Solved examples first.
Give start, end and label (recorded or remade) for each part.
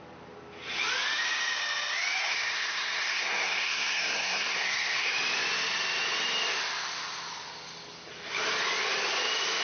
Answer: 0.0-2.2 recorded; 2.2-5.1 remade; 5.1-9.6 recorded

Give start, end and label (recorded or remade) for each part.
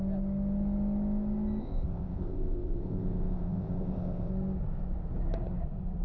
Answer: 0.0-1.6 recorded; 1.6-4.3 remade; 4.3-6.0 recorded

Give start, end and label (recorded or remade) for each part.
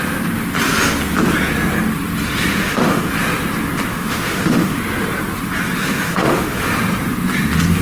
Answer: 0.0-2.5 recorded; 2.5-3.1 remade; 3.1-3.9 recorded; 3.9-4.8 remade; 4.8-5.8 recorded; 5.8-6.7 remade; 6.7-7.8 recorded